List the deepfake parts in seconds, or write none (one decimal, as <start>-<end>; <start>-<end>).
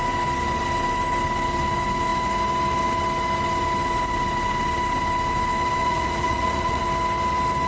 5.8-6.8